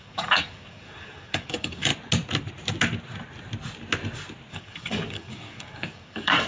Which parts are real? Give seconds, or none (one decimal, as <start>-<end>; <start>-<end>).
1.9-4.5